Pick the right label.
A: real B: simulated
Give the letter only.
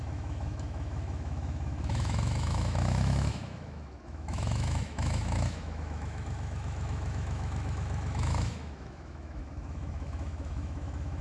B